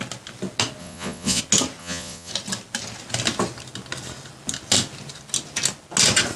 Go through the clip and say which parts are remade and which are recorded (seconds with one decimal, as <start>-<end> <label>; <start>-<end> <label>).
0.0-0.8 recorded; 0.8-1.4 remade; 1.4-1.8 recorded; 1.8-2.3 remade; 2.3-6.4 recorded